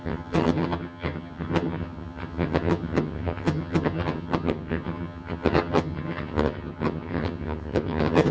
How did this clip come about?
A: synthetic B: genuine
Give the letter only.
A